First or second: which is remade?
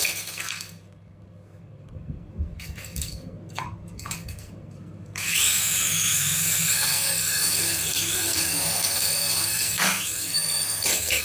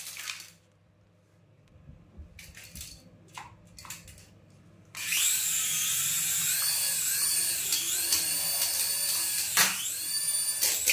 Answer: first